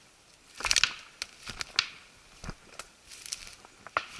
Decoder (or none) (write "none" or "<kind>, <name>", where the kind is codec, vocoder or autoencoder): none